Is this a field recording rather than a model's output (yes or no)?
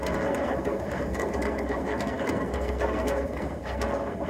no